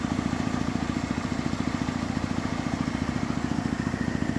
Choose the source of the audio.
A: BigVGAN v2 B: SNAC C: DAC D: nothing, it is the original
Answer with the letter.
D